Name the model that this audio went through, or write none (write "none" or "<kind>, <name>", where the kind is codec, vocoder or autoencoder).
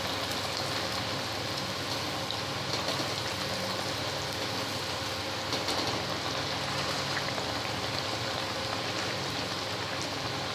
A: none